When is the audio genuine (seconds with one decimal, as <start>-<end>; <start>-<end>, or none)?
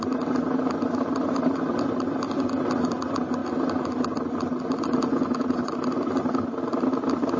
0.0-7.4